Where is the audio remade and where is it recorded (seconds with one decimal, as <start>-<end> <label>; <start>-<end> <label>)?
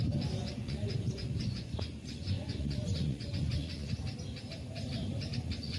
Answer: 0.0-0.4 recorded; 0.4-3.9 remade; 3.9-5.3 recorded; 5.3-5.8 remade